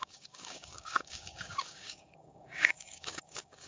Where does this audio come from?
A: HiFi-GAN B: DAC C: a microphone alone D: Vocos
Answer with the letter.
B